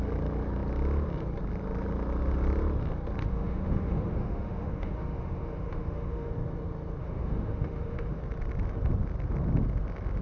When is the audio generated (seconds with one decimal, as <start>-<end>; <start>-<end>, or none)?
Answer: 3.2-6.3; 7.0-8.2